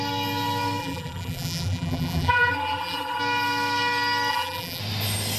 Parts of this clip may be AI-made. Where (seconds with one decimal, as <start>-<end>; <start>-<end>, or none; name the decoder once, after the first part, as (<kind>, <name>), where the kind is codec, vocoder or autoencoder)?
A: 0.8-3.2 (vocoder, BigVGAN v2); 4.3-4.8